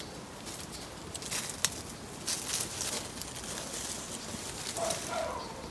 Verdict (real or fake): real